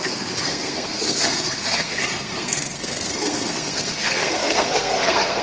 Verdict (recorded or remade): remade